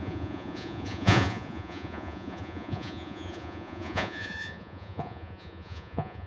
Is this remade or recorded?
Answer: remade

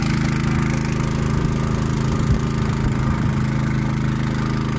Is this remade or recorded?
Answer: recorded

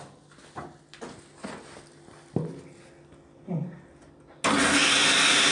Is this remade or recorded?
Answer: recorded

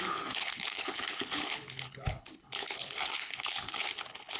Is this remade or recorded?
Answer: remade